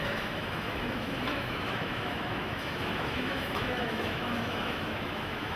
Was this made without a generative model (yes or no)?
no